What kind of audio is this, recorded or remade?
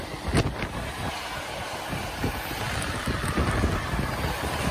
recorded